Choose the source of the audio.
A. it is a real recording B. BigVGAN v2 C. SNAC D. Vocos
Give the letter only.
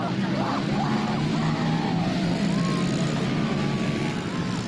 A